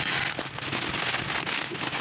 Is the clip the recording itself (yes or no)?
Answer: yes